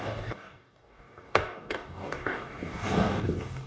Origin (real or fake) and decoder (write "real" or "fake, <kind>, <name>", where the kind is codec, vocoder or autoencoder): fake, codec, DAC